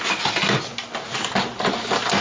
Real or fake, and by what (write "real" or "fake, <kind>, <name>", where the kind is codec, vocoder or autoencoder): real